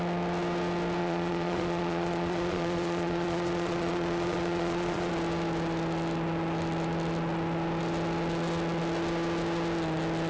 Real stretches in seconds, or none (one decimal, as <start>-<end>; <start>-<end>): 0.0-1.0; 5.1-10.3